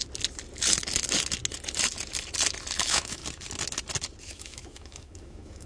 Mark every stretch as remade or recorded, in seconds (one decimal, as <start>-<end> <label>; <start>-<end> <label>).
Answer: 0.0-2.8 recorded; 2.8-3.2 remade; 3.2-4.2 recorded; 4.2-5.7 remade